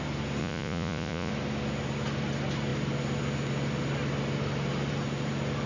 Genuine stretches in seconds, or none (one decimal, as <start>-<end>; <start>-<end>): 0.0-0.4; 1.3-5.7